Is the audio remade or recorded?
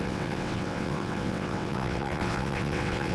remade